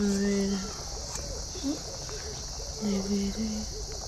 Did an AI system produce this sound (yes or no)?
no